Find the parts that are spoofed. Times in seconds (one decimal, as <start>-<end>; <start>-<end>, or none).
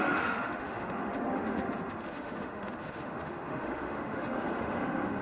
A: 0.0-5.2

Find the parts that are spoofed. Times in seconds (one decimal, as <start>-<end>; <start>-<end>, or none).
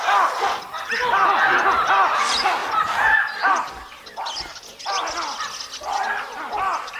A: 2.6-3.5